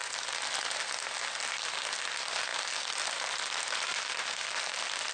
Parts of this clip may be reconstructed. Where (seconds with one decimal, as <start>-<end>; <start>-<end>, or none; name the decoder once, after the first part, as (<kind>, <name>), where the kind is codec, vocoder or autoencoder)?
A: none